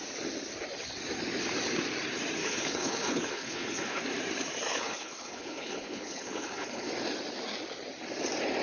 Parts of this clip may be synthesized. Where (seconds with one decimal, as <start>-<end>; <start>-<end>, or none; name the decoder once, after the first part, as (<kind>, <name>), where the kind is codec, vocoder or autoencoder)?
2.4-4.0 (codec, HILCodec); 4.7-6.9